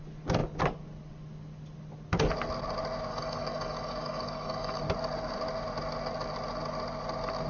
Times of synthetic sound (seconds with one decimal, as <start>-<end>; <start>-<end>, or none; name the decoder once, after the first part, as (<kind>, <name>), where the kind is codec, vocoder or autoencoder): 3.1-4.8 (codec, DAC)